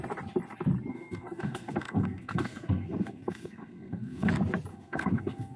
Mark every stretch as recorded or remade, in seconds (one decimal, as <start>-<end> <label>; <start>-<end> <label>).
0.0-0.9 recorded; 0.9-4.3 remade; 4.3-4.7 recorded; 4.7-5.6 remade